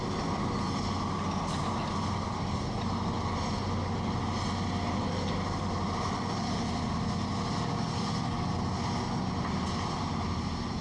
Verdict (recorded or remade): recorded